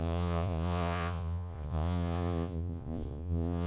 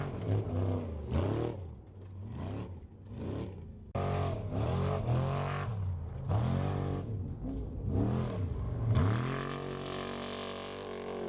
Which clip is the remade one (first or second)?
first